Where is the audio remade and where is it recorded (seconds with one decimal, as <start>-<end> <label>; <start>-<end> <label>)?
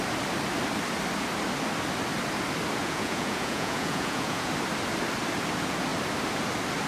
0.0-2.8 recorded; 2.8-4.5 remade; 4.5-6.9 recorded